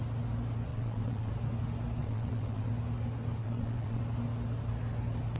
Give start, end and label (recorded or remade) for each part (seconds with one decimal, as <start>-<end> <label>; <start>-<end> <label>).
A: 0.0-0.7 recorded; 0.7-1.3 remade; 1.3-2.0 recorded; 2.0-2.7 remade; 2.7-3.4 recorded; 3.4-4.0 remade; 4.0-5.4 recorded